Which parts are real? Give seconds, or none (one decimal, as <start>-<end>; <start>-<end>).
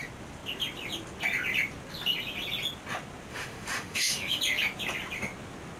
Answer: 0.0-3.3; 4.4-5.8